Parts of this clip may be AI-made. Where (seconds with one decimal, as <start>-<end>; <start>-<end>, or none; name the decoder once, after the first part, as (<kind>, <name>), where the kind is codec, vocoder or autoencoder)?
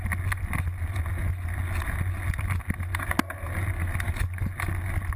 none